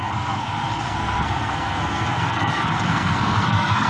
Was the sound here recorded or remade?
remade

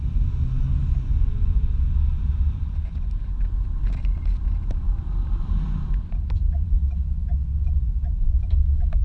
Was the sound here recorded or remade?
recorded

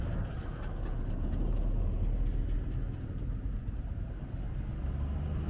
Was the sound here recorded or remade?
recorded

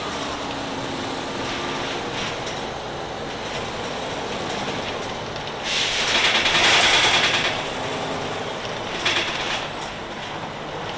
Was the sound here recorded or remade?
recorded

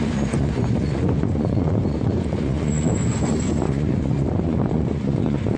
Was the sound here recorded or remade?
remade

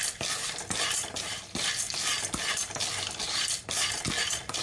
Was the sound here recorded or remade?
recorded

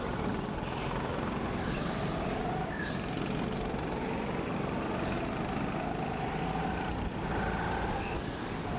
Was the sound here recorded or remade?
recorded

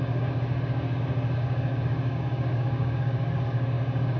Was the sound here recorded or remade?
remade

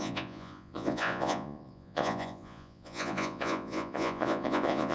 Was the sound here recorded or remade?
remade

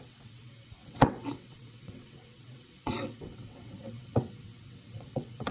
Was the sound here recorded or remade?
remade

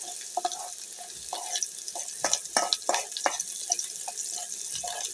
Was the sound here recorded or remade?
recorded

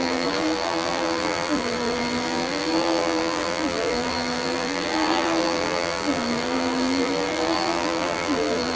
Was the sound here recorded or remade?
remade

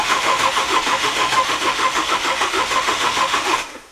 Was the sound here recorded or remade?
remade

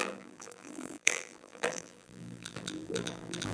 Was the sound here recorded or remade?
remade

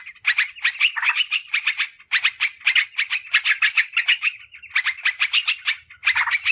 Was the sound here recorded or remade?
recorded